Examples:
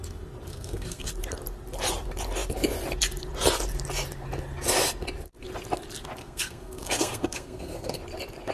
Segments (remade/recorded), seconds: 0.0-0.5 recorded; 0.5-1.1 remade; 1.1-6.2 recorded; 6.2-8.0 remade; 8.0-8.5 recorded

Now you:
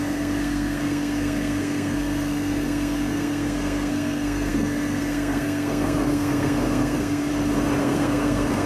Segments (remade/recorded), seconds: 0.0-7.3 remade; 7.3-7.8 recorded; 7.8-8.7 remade

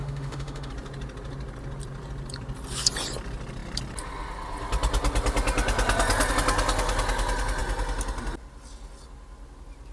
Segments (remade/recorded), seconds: 0.0-0.7 remade; 0.7-9.9 recorded

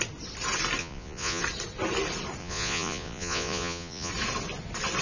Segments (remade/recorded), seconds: 0.0-0.8 recorded; 0.8-1.4 remade; 1.4-2.4 recorded; 2.4-4.1 remade; 4.1-5.0 recorded

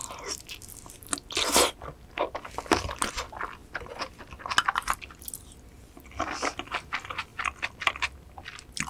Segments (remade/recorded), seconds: 0.0-8.9 recorded

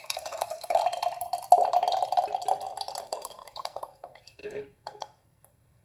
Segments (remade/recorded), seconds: 0.0-0.8 remade; 0.8-3.0 recorded; 3.0-5.8 remade

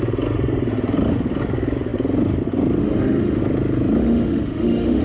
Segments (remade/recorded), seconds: 0.0-2.8 recorded; 2.8-3.4 remade; 3.4-4.0 recorded; 4.0-5.0 remade